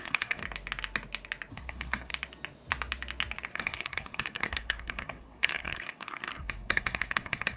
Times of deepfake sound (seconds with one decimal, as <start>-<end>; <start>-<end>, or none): 0.0-0.4; 1.5-2.1; 3.5-7.6